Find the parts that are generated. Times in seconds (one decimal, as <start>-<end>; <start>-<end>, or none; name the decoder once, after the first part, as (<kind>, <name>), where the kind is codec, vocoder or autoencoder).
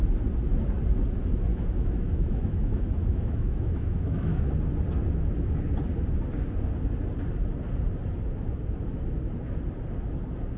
1.5-4.5 (autoencoder, DAC-VAE)